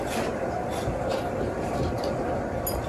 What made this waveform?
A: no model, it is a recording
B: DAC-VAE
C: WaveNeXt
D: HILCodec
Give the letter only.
A